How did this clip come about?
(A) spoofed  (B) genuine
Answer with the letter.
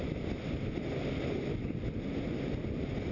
B